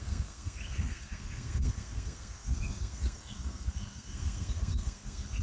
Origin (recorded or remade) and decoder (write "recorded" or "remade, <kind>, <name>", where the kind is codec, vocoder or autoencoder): remade, codec, SNAC